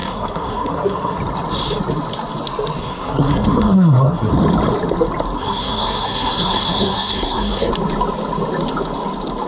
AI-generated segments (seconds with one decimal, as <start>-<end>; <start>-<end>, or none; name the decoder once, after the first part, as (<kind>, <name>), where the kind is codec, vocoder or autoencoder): 0.0-1.2 (codec, SNAC); 2.8-4.3; 5.4-7.7